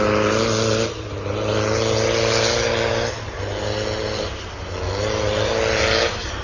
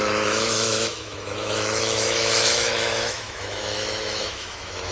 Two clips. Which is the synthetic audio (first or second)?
second